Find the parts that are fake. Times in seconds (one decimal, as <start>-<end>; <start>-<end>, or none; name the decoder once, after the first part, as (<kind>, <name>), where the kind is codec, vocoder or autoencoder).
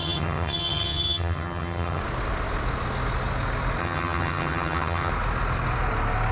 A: 0.0-2.0 (vocoder, HiFi-GAN); 3.8-5.1